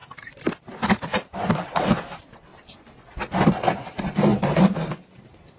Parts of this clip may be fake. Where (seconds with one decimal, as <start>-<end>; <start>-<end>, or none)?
1.0-2.5; 3.9-5.6